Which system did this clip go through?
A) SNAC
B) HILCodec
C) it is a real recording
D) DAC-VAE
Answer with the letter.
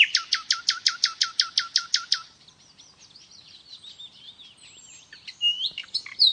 C